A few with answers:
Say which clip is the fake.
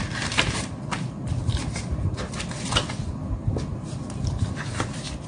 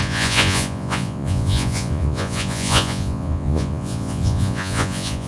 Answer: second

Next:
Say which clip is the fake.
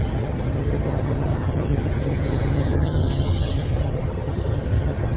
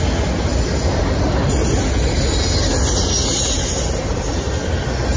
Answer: first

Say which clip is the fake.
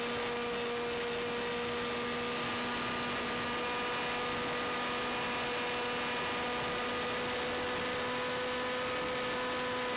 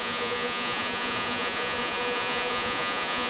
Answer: second